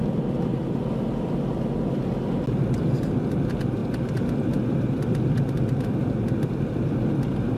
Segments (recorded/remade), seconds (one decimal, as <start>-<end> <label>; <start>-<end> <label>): 0.0-7.6 recorded